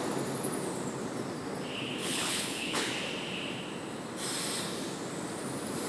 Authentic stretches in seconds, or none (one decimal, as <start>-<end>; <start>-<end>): 0.0-2.0; 2.9-5.9